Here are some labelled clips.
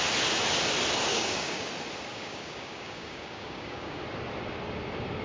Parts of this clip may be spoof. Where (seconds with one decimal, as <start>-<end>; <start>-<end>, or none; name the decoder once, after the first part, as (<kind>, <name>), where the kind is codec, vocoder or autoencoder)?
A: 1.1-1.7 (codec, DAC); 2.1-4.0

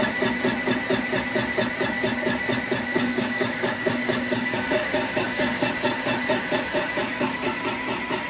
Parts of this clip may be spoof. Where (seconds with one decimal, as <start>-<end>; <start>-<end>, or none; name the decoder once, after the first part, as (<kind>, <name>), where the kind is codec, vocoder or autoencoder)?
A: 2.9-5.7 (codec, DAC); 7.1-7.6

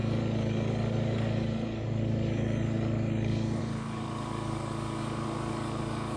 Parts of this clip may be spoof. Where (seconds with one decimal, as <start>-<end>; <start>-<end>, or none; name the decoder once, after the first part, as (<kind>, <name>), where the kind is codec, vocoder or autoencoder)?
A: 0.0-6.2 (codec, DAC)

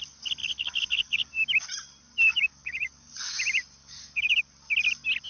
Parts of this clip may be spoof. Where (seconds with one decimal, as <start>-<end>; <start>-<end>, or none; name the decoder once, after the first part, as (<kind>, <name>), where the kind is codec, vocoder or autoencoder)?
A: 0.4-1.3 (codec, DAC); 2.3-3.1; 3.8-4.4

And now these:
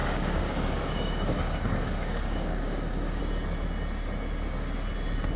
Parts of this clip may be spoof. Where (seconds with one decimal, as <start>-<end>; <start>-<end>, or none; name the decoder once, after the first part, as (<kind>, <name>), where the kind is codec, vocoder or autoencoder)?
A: 0.0-3.2 (codec, DAC)

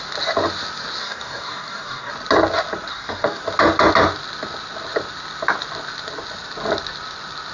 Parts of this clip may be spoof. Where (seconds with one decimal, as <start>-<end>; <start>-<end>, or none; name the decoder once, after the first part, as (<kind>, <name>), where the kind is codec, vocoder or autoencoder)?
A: 1.0-2.1 (codec, DAC); 2.9-3.4